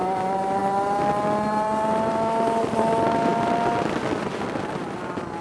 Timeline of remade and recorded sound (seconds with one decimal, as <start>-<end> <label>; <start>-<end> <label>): 0.0-5.4 recorded